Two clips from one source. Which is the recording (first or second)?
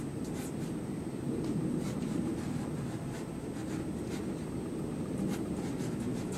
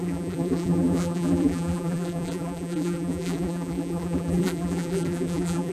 first